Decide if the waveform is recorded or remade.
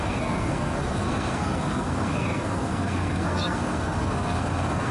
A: remade